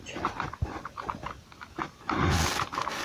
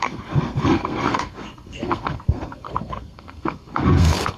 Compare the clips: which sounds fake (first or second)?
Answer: second